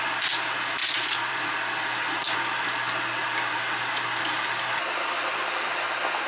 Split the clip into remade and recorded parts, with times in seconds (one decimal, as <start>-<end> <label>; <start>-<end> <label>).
0.0-0.8 recorded; 0.8-1.4 remade; 1.4-6.3 recorded